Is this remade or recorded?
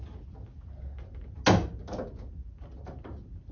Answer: recorded